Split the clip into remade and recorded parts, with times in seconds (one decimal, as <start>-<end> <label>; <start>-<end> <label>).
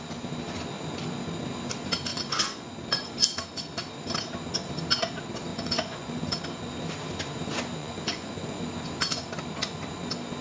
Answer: 0.0-2.1 recorded; 2.1-2.7 remade; 2.7-5.5 recorded; 5.5-6.4 remade; 6.4-7.8 recorded; 7.8-8.6 remade; 8.6-10.4 recorded